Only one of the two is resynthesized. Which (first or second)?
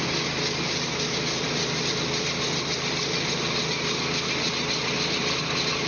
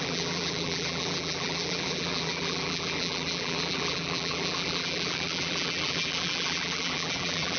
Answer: second